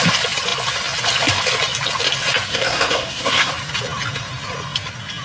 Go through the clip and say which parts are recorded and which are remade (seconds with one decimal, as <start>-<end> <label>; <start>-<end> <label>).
0.0-2.5 recorded; 2.5-3.5 remade; 3.5-5.2 recorded